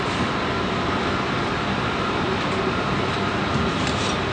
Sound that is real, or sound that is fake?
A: fake